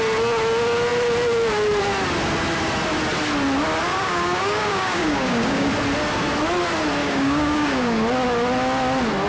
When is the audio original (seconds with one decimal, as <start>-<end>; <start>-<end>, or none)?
0.0-3.9; 5.7-7.0; 8.0-9.3